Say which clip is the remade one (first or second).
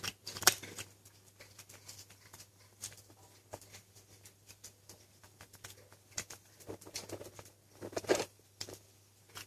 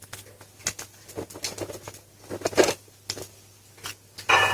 first